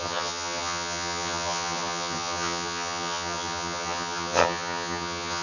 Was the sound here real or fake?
fake